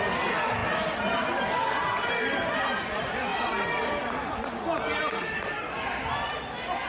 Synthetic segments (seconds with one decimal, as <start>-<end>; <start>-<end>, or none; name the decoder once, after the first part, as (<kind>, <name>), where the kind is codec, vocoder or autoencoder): none